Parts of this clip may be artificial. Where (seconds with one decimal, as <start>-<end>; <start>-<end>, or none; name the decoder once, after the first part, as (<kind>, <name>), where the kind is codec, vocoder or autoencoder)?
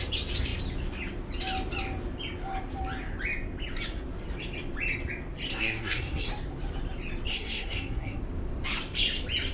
5.5-6.3 (codec, SNAC); 7.3-8.2